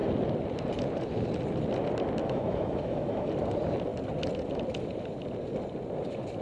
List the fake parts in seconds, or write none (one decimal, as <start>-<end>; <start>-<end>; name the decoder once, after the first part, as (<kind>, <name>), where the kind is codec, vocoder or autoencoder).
2.2-3.3 (autoencoder, DAC-VAE)